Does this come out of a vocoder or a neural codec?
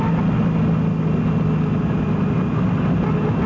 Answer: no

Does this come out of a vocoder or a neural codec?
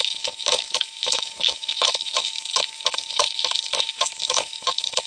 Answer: yes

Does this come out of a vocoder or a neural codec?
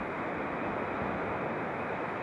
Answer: no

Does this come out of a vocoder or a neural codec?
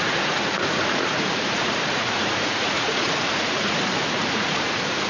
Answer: yes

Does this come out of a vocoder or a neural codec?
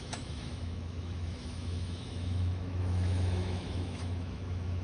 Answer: yes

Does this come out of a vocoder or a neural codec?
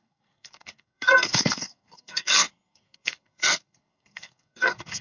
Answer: yes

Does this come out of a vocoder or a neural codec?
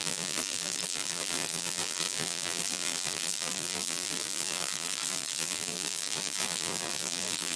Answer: yes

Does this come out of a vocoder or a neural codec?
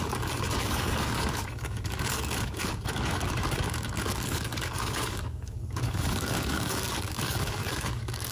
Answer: yes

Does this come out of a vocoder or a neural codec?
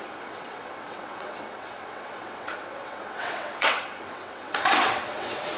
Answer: yes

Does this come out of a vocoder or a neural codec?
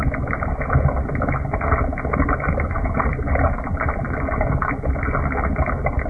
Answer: no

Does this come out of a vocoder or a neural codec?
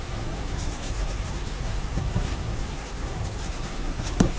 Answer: yes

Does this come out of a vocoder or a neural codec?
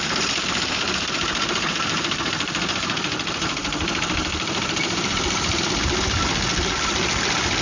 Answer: yes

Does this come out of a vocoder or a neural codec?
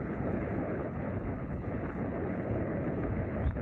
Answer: yes